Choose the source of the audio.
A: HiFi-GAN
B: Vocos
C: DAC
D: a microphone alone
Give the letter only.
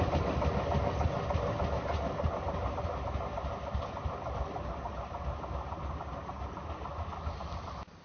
D